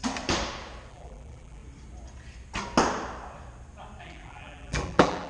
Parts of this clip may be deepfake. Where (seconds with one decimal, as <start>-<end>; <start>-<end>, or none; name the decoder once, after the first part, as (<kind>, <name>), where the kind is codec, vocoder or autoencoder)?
0.9-1.6 (vocoder, BigVGAN v2); 4.0-5.3